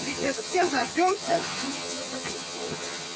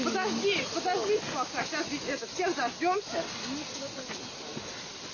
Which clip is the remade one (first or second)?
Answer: first